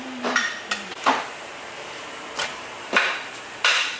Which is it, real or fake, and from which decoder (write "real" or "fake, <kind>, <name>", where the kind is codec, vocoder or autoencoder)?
fake, vocoder, BigVGAN v2